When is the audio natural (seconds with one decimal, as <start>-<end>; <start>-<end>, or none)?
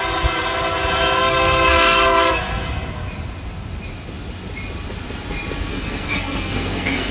0.0-1.2; 2.3-5.7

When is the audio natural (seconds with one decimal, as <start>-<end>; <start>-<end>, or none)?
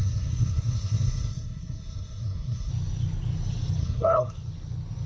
2.7-3.8; 4.3-5.1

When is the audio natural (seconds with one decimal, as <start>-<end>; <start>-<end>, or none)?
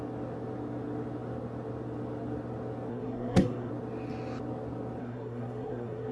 0.0-2.9; 3.7-5.0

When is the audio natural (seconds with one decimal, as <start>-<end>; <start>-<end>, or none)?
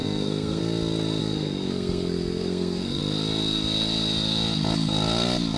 0.6-1.2; 3.0-5.6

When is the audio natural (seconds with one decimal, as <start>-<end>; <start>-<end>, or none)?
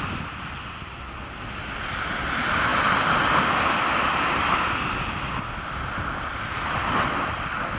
0.0-7.8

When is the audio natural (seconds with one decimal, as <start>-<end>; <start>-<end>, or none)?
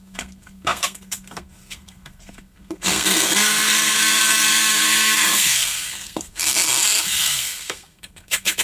none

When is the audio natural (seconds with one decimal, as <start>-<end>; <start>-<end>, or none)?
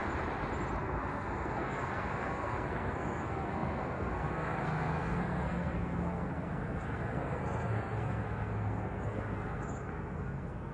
0.0-0.8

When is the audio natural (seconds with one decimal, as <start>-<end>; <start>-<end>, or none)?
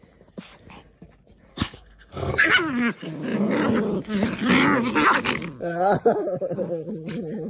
0.0-1.5; 2.5-7.5